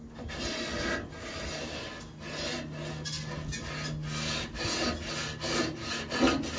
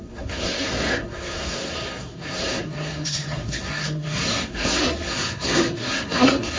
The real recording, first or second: first